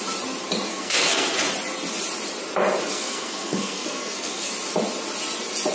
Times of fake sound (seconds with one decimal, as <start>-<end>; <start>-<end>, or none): 0.7-1.4; 2.9-4.5